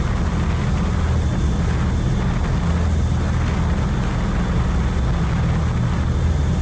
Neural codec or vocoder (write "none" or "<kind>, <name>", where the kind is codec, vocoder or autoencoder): none